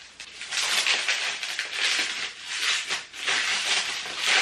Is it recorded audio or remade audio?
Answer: recorded